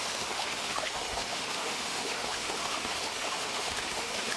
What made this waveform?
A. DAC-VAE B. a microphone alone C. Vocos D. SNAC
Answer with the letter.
A